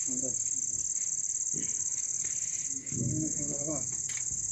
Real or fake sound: real